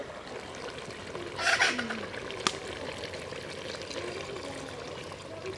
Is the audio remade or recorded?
recorded